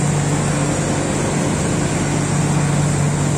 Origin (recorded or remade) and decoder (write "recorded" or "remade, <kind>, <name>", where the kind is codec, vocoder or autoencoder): recorded